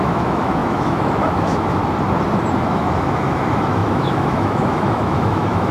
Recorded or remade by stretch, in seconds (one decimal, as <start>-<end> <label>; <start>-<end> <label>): 0.0-1.8 remade; 1.8-2.6 recorded; 2.6-5.7 remade